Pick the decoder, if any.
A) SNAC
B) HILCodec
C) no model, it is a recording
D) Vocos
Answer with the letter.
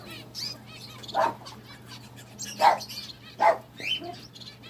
C